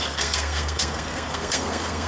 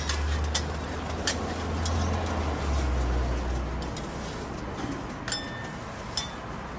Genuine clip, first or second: second